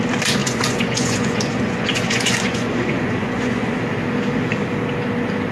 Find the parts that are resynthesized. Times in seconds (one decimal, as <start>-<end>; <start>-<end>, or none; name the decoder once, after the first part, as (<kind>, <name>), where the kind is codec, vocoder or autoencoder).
0.4-3.7 (vocoder, Vocos)